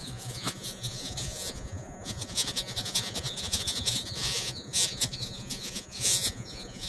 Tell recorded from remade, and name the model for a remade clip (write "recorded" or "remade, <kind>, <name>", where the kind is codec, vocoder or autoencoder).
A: remade, vocoder, Vocos